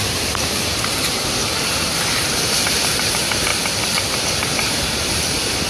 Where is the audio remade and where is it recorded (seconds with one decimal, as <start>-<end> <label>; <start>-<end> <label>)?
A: 0.0-5.7 remade